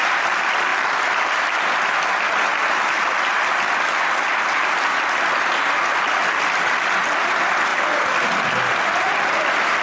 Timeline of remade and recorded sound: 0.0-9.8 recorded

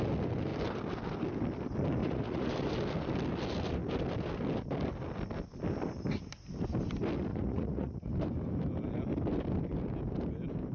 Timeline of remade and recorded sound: 0.0-2.0 recorded; 2.0-2.5 remade; 2.5-7.3 recorded; 7.3-8.1 remade; 8.1-10.7 recorded

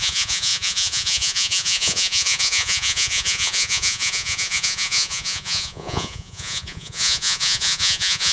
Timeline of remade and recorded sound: 0.0-8.3 remade

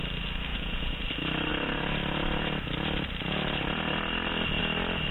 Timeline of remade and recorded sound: 0.0-0.5 recorded; 0.5-1.0 remade; 1.0-5.1 recorded